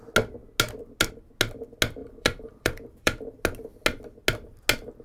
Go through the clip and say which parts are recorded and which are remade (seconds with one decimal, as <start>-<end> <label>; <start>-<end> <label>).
0.0-2.0 recorded; 2.0-3.4 remade; 3.4-5.0 recorded